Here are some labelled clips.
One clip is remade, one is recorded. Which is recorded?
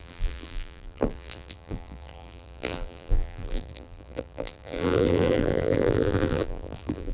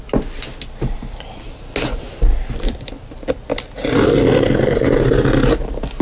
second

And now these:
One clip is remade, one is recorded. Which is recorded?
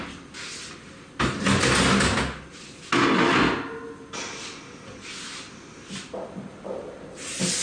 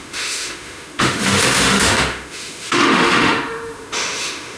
first